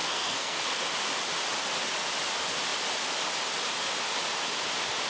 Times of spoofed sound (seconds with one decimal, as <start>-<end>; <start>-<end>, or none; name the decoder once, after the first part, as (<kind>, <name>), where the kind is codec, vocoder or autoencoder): 0.0-0.8 (codec, SNAC)